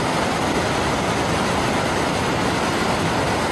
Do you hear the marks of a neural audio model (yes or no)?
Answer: no